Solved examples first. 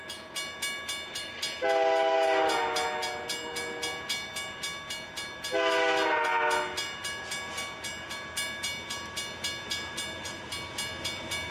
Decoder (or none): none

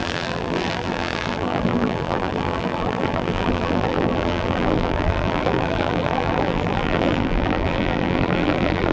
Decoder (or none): vocoder, BigVGAN v2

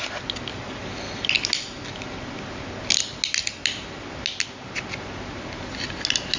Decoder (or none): none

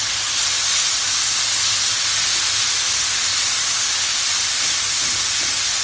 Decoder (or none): none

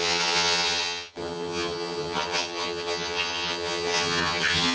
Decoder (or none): vocoder, HiFi-GAN